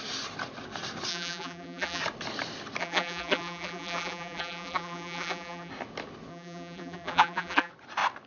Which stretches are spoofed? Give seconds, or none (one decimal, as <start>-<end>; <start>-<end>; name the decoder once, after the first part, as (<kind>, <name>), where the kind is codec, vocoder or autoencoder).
1.1-2.0 (vocoder, BigVGAN v2); 2.8-5.7; 6.3-7.7